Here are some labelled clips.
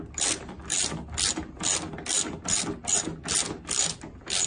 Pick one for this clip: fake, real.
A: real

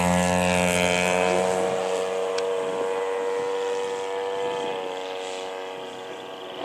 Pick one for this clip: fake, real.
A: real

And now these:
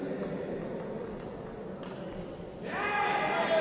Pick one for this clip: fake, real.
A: real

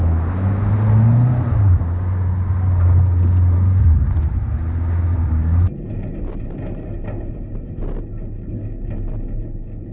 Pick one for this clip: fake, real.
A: real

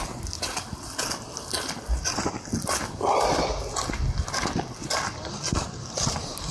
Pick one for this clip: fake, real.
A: real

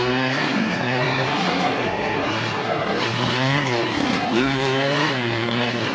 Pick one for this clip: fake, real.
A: fake